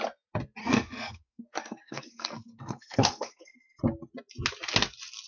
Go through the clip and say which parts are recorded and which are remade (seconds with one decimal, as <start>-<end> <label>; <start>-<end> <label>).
0.0-0.6 recorded; 0.6-3.8 remade; 3.8-5.3 recorded